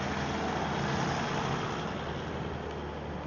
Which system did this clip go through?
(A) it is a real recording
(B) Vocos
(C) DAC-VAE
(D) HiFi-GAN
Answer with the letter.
A